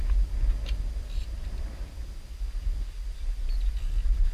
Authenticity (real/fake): real